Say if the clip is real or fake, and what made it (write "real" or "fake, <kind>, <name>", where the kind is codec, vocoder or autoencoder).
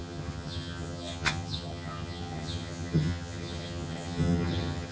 fake, vocoder, HiFi-GAN